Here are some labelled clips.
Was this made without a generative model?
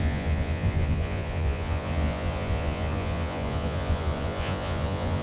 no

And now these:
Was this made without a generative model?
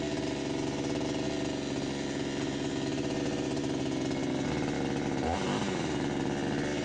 yes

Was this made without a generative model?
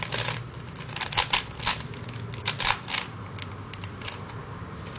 no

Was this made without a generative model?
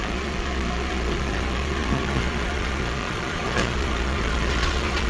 no